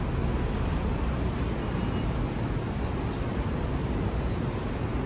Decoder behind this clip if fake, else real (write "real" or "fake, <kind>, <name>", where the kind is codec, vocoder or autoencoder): real